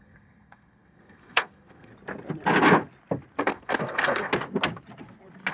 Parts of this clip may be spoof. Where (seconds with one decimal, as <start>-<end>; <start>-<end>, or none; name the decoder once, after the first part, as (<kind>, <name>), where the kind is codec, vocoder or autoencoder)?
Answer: 0.0-1.9 (codec, SNAC); 3.4-4.3